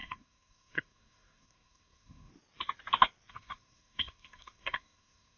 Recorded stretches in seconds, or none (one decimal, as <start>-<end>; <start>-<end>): 2.3-3.3